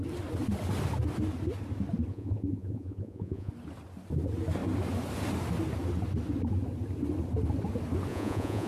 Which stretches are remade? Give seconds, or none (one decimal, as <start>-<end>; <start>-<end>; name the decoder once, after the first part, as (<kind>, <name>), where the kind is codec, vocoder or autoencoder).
2.1-3.5 (vocoder, Vocos); 8.1-8.7